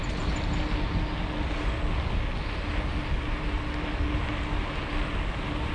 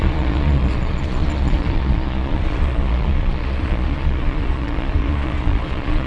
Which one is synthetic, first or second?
second